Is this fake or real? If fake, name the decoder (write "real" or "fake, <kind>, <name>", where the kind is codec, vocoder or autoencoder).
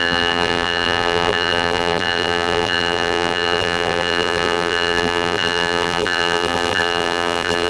fake, vocoder, BigVGAN v2